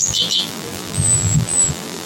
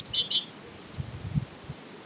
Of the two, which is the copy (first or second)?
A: first